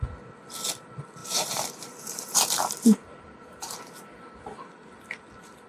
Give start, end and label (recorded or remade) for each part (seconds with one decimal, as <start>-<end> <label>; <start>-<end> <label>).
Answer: 0.0-1.2 recorded; 1.2-3.8 remade; 3.8-5.7 recorded